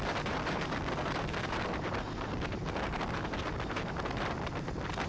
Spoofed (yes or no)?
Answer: yes